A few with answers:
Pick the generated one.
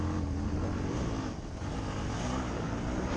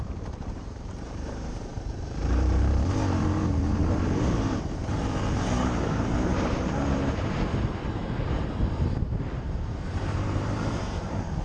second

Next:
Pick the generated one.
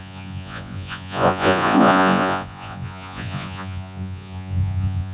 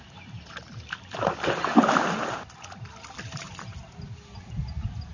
first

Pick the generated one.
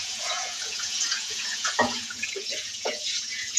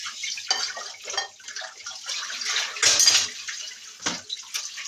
first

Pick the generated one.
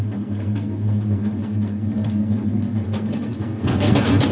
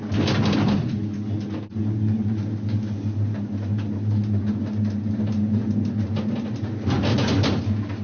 first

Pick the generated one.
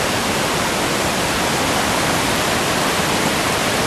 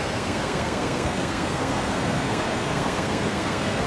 second